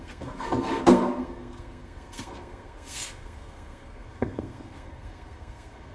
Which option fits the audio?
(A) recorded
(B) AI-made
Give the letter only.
B